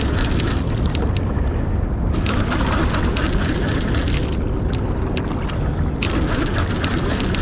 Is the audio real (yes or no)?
yes